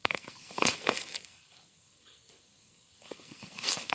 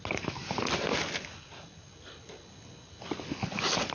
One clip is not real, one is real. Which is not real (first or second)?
first